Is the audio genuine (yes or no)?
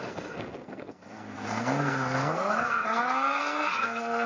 no